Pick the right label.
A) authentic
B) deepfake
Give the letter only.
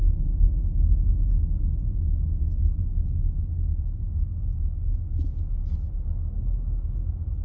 A